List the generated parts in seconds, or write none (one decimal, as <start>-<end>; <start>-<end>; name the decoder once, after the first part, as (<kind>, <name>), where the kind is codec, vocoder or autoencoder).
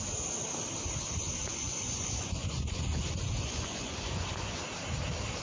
1.4-4.6 (vocoder, Vocos)